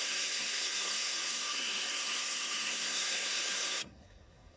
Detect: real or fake fake